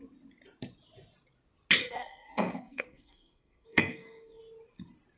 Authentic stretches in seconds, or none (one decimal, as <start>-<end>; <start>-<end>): 0.0-1.8; 4.4-5.2